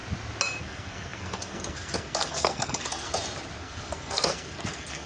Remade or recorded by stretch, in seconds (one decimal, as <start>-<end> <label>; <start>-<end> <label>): 0.0-0.6 recorded; 0.6-3.1 remade; 3.1-3.6 recorded; 3.6-5.1 remade